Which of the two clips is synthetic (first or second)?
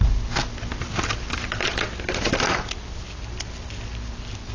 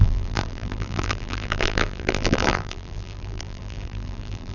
second